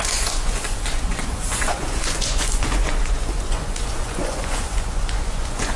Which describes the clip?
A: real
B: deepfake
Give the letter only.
B